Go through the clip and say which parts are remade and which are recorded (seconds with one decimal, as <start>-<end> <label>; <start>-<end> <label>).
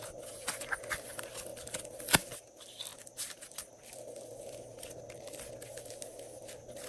0.0-1.5 recorded; 1.5-2.4 remade; 2.4-6.9 recorded